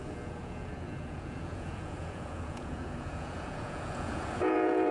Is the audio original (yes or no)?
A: no